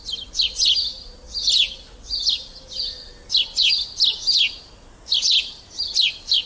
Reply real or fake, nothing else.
real